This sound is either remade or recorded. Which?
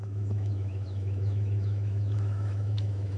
remade